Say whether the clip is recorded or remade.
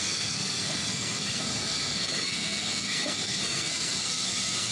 remade